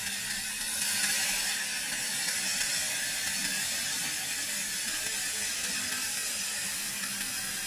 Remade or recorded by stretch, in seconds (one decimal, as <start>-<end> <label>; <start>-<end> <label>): 0.0-7.7 recorded